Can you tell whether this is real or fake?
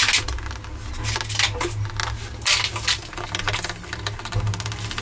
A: real